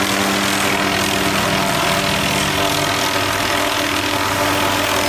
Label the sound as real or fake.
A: real